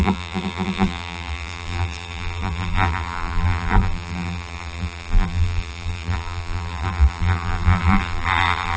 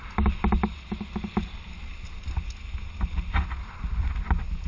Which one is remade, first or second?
first